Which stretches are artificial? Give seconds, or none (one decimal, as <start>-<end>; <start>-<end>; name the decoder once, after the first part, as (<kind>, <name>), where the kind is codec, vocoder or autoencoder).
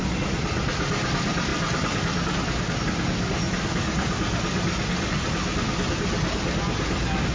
none